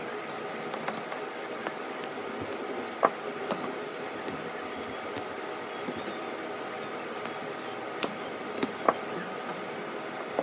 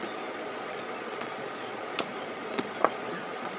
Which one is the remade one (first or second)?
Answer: second